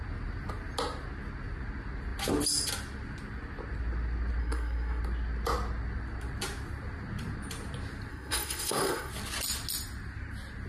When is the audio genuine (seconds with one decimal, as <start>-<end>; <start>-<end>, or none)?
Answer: 0.0-4.4; 5.0-8.1; 9.1-10.7